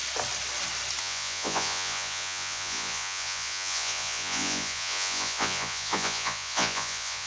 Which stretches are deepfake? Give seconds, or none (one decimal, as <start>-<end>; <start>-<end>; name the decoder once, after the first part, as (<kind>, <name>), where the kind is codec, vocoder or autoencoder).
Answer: 1.0-7.3 (vocoder, Vocos)